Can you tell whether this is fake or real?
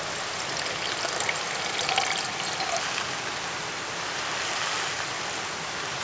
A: real